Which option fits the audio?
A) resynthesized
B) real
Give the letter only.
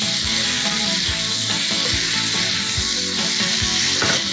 B